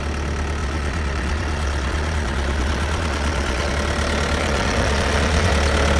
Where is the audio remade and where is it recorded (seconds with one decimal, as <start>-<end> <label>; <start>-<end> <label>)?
0.0-0.6 recorded; 0.6-3.7 remade; 3.7-4.4 recorded; 4.4-5.5 remade; 5.5-6.0 recorded